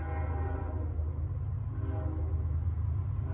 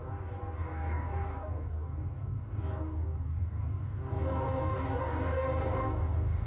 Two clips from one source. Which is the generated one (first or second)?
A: second